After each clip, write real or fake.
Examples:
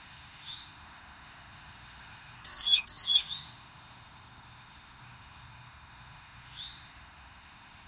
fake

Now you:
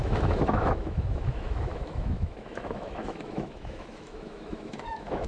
fake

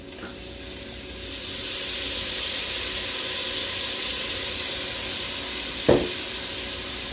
real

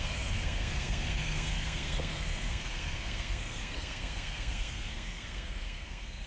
fake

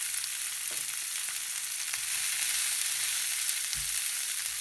real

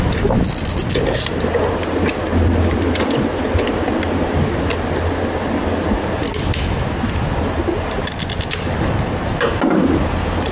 real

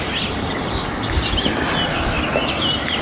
real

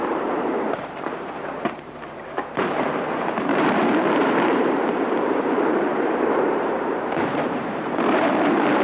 fake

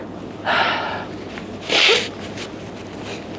real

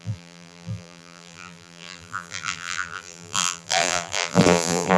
fake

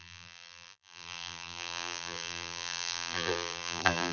fake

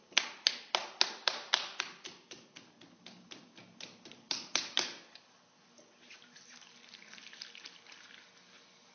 real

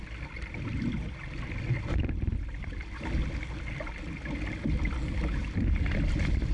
real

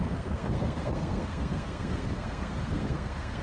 fake